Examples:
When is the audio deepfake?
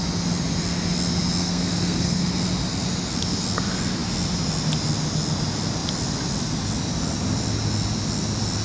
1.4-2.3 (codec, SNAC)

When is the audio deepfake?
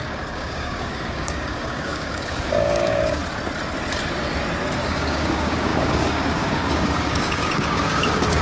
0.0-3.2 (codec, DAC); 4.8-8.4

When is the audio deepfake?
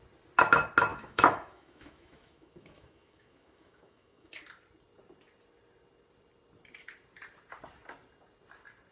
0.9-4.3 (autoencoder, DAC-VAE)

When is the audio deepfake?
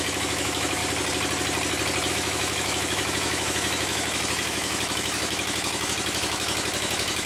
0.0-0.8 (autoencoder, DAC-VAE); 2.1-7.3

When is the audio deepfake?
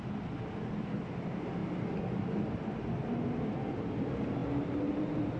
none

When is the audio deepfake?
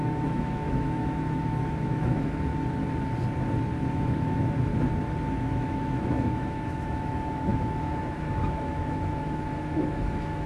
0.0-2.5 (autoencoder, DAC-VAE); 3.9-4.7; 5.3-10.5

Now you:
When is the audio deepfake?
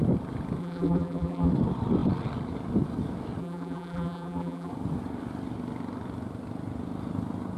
0.6-1.5 (vocoder, BigVGAN v2); 3.4-4.7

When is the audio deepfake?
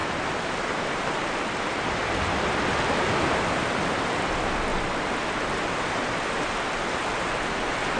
none